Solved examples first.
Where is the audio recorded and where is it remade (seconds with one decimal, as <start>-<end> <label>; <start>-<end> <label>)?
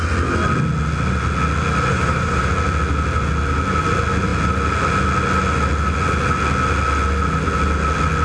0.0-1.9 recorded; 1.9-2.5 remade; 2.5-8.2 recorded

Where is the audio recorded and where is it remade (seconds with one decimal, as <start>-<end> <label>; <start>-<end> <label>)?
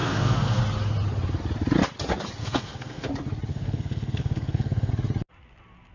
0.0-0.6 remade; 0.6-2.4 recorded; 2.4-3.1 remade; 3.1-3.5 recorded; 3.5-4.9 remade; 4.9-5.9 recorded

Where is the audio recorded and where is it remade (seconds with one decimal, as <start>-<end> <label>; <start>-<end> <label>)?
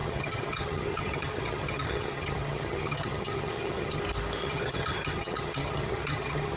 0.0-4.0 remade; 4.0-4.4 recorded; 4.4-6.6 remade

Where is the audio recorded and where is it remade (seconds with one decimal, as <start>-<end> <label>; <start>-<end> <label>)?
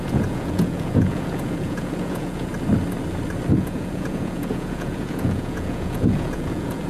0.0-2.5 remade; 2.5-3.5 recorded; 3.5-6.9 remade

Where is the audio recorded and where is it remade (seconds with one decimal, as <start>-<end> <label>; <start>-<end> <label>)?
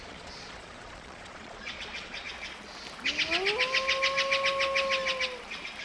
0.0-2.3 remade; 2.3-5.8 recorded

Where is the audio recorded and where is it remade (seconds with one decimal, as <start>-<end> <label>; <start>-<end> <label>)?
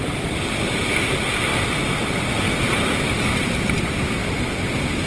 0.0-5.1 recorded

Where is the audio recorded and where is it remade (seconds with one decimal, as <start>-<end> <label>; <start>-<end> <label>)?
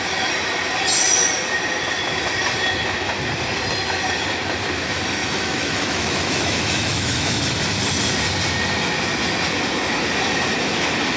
0.0-5.2 recorded; 5.2-7.4 remade; 7.4-11.2 recorded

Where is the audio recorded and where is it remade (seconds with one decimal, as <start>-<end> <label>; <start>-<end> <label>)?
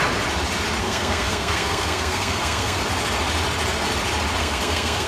0.0-0.8 recorded; 0.8-2.8 remade; 2.8-4.4 recorded; 4.4-5.1 remade